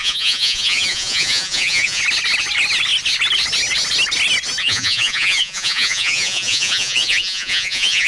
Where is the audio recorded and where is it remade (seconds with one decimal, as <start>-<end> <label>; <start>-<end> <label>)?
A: 0.0-2.0 remade; 2.0-4.6 recorded; 4.6-8.1 remade